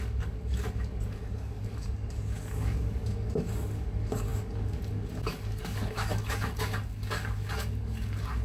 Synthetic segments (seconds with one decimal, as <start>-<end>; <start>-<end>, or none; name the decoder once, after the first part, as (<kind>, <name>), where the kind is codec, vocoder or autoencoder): 0.0-8.4 (codec, DAC)